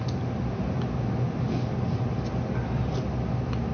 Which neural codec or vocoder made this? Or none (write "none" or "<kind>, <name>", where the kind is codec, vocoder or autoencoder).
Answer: none